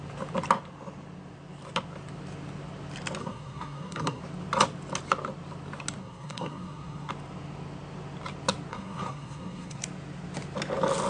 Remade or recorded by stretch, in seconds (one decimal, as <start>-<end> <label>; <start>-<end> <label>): 0.0-3.2 recorded; 3.2-4.2 remade; 4.2-6.0 recorded; 6.0-7.1 remade; 7.1-8.7 recorded; 8.7-9.8 remade; 9.8-11.1 recorded